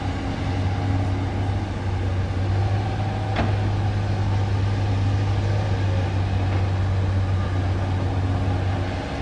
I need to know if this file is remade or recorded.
recorded